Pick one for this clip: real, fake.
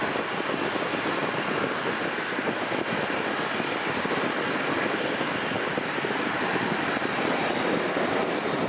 real